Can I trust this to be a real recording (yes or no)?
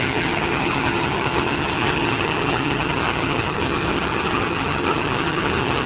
no